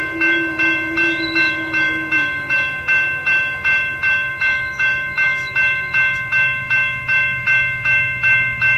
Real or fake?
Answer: fake